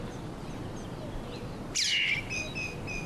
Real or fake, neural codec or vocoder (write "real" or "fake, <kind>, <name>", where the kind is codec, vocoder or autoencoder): real